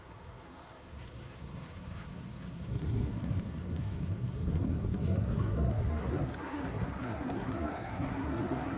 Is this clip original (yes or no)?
no